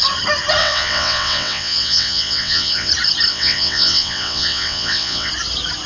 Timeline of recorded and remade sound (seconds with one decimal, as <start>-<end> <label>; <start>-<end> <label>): 0.0-0.6 recorded; 0.6-2.9 remade; 2.9-3.3 recorded; 3.3-5.3 remade; 5.3-5.9 recorded

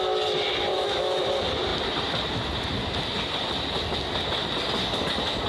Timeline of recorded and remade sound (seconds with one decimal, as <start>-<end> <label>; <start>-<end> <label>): 0.0-0.7 recorded; 0.7-1.2 remade; 1.2-5.5 recorded

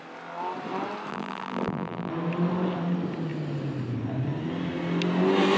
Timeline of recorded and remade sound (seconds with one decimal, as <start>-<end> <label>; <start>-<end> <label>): 0.0-1.1 recorded; 1.1-2.1 remade; 2.1-5.6 recorded

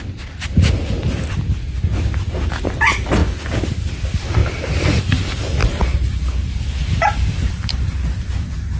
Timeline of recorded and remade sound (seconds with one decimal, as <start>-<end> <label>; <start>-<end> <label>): 0.0-4.4 recorded; 4.4-5.0 remade; 5.0-5.6 recorded; 5.6-8.3 remade; 8.3-8.8 recorded

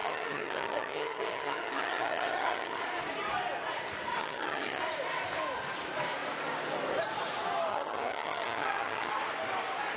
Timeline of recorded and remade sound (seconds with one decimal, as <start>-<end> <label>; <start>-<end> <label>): 0.0-2.8 remade; 2.8-4.2 recorded; 4.2-4.8 remade; 4.8-7.7 recorded; 7.7-9.1 remade; 9.1-10.0 recorded

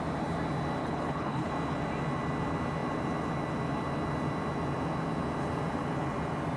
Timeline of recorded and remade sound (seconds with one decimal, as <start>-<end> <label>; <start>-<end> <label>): 0.0-0.8 recorded; 0.8-1.5 remade; 1.5-6.6 recorded

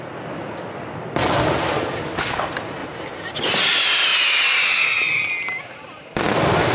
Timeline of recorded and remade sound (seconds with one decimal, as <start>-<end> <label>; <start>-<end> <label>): 0.0-6.7 recorded